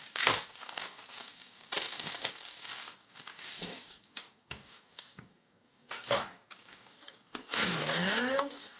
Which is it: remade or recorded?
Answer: remade